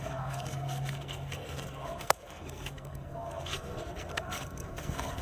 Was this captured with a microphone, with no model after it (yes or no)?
no